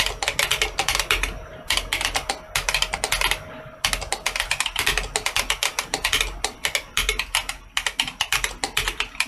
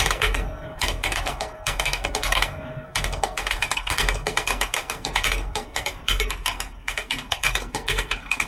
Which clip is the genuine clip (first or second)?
first